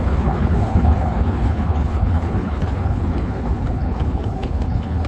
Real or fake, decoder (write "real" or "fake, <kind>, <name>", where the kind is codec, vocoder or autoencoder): fake, codec, HILCodec